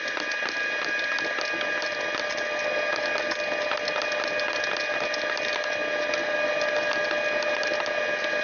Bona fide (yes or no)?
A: yes